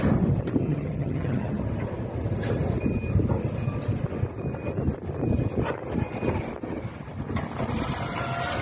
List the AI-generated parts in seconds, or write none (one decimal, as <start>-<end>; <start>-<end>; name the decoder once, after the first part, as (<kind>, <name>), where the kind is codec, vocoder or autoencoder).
0.6-1.6 (vocoder, HiFi-GAN)